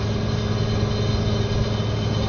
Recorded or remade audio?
recorded